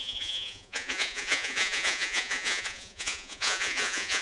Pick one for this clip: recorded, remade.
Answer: remade